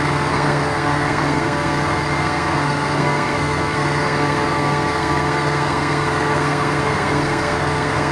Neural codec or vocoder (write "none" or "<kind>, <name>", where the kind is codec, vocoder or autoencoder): codec, SNAC